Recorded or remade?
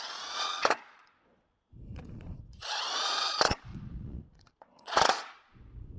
remade